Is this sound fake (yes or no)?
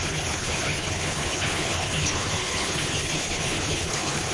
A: yes